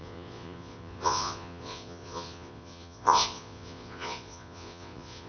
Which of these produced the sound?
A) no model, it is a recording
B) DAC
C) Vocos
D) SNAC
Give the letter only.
C